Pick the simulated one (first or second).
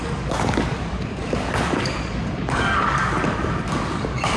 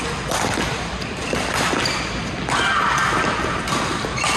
first